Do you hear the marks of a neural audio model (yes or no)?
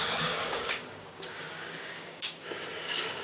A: yes